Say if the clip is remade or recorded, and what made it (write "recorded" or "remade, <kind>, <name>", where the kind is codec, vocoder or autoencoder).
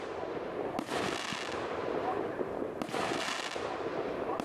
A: recorded